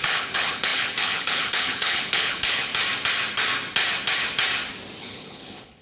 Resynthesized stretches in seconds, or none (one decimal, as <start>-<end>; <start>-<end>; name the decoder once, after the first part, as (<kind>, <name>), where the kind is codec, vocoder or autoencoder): 0.0-2.7 (codec, HILCodec); 5.0-5.8